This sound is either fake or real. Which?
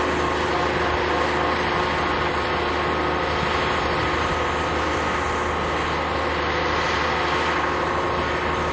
real